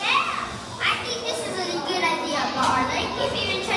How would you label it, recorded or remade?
remade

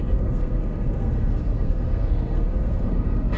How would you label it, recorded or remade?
remade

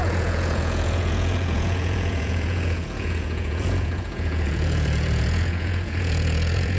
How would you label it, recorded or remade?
remade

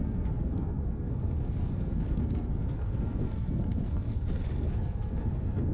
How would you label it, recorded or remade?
remade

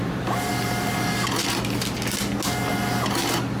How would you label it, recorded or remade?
recorded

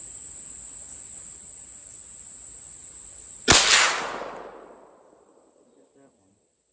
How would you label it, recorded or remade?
recorded